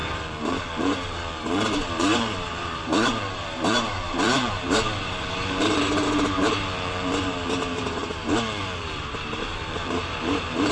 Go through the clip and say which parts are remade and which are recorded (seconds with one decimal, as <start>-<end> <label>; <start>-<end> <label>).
0.0-10.7 remade